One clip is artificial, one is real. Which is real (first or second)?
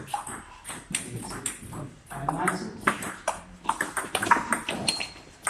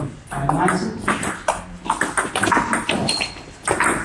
second